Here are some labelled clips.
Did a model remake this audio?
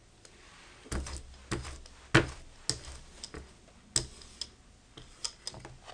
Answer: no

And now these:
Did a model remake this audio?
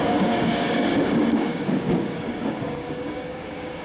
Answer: yes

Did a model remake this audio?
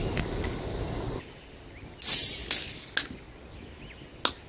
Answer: no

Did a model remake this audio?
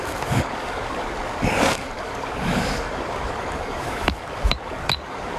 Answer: yes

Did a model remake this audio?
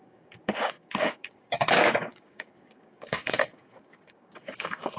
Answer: yes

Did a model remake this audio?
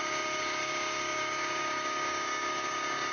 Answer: yes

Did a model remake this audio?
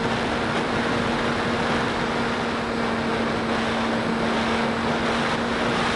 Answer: no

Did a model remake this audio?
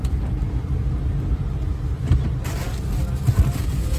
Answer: no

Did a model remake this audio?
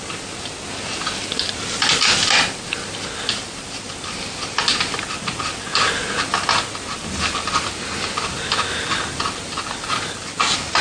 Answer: no